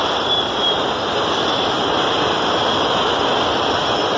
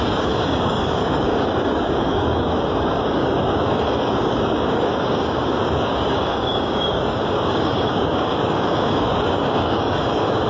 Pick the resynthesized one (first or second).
second